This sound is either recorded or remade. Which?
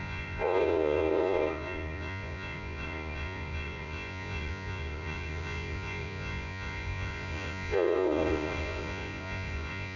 remade